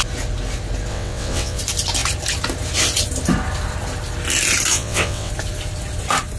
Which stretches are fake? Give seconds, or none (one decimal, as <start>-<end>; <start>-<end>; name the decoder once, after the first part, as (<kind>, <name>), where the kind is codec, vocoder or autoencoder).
0.9-1.6 (vocoder, WaveNeXt); 4.7-5.3